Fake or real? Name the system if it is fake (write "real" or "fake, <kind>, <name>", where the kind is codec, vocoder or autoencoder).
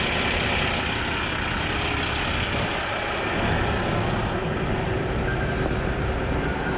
real